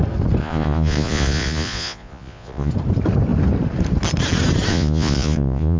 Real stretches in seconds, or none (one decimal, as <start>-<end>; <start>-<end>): 0.0-0.4; 2.7-4.7